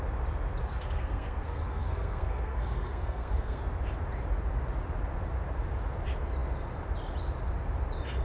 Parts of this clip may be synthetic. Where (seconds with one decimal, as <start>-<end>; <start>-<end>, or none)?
0.6-3.6

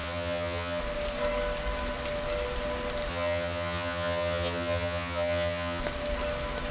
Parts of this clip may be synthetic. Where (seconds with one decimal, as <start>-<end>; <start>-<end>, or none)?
0.0-0.8; 3.1-5.8